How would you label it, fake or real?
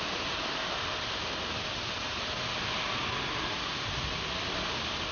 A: real